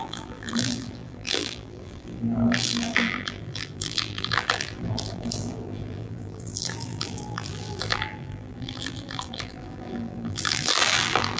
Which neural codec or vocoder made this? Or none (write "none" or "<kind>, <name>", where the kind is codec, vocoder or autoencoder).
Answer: vocoder, BigVGAN v2